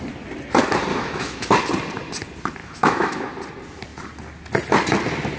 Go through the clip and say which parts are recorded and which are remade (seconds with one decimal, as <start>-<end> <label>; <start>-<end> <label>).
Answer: 0.0-0.9 recorded; 0.9-1.5 remade; 1.5-2.6 recorded; 2.6-3.3 remade; 3.3-5.4 recorded